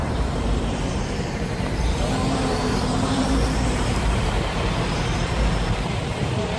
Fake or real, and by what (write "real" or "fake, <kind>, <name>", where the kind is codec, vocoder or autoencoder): fake, vocoder, BigVGAN v2